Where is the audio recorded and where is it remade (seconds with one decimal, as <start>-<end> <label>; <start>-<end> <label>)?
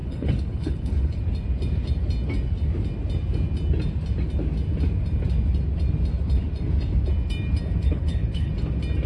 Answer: 0.0-1.2 remade; 1.2-7.8 recorded; 7.8-8.5 remade; 8.5-9.1 recorded